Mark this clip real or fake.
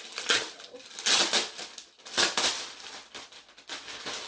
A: real